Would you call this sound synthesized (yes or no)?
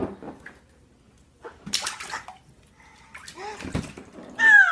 no